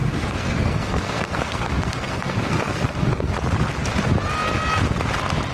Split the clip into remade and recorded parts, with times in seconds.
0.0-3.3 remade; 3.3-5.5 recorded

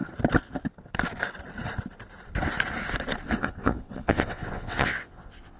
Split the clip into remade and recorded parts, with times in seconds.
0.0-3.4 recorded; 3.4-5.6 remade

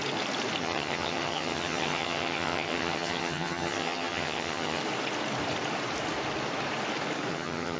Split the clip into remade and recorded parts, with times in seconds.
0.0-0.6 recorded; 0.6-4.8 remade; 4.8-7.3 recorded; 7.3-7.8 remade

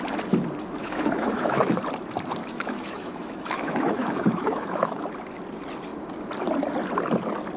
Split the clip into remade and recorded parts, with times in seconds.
0.0-0.8 recorded; 0.8-1.8 remade; 1.8-2.4 recorded; 2.4-5.1 remade; 5.1-7.6 recorded

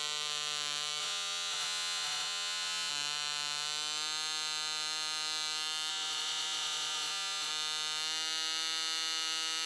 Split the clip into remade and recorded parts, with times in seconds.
0.0-1.0 recorded; 1.0-2.9 remade; 2.9-5.9 recorded; 5.9-7.5 remade; 7.5-9.7 recorded

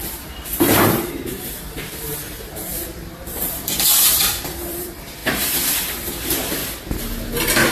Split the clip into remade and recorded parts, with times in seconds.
0.0-6.6 remade; 6.6-7.7 recorded

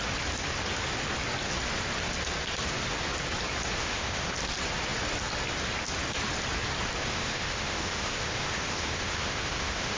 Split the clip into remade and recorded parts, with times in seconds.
0.0-3.8 recorded; 3.8-4.3 remade; 4.3-7.0 recorded; 7.0-10.0 remade

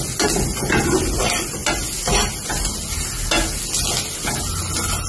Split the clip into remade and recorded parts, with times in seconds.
0.0-5.1 recorded